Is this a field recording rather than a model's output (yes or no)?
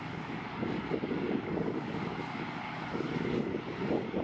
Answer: no